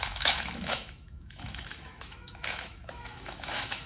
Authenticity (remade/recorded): remade